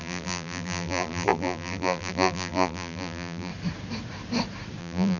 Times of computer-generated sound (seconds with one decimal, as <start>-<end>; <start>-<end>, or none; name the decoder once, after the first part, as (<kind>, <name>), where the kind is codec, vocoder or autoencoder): 0.0-3.5 (vocoder, BigVGAN v2); 4.8-5.2